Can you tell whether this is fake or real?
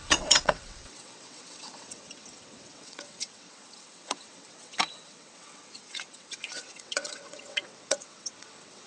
fake